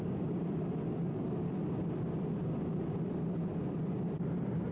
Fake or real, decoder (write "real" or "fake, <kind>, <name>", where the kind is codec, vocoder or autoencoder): real